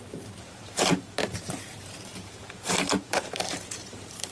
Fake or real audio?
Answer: fake